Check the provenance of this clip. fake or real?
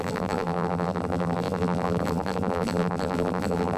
fake